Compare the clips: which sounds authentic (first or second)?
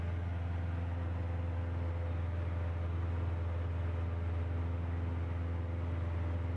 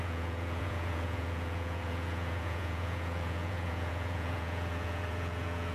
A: first